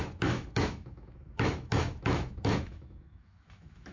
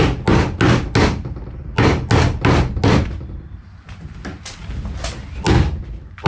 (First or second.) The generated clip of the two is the first